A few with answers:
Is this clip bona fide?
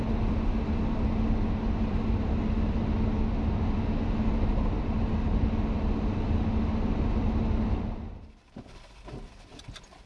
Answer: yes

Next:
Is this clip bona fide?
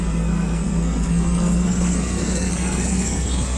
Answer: no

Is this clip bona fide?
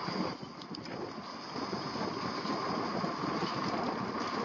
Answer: yes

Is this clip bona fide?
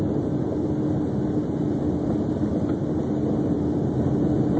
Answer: yes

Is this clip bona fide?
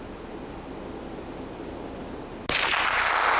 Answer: yes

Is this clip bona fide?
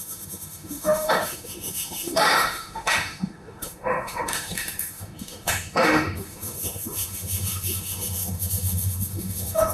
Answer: no